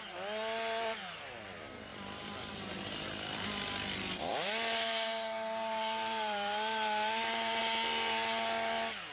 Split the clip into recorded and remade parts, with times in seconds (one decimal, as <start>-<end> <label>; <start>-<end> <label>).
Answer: 0.0-1.9 recorded; 1.9-2.5 remade; 2.5-4.3 recorded; 4.3-7.6 remade; 7.6-9.1 recorded